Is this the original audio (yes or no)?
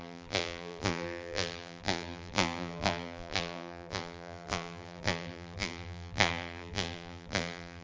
no